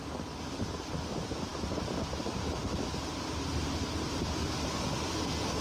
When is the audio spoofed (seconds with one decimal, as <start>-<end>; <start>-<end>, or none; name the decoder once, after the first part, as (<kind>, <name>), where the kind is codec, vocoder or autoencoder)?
none